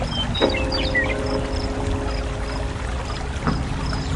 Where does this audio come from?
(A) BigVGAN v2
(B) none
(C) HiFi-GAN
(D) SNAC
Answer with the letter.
B